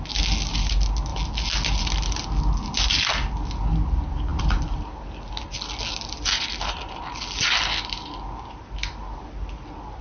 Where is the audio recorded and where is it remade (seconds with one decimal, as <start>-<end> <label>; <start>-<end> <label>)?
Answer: 0.0-10.0 recorded